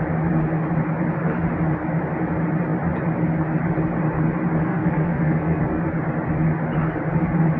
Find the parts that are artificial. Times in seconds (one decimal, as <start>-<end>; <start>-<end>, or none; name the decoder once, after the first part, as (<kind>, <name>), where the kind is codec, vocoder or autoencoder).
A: 4.7-5.6 (codec, SNAC)